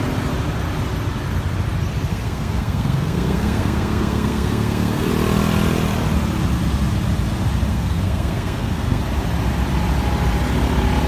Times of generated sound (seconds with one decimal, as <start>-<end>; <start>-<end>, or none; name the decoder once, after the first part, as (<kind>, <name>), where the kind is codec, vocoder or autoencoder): 2.1-5.1 (codec, SNAC); 7.7-9.0